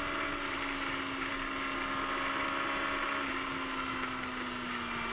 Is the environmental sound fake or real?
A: real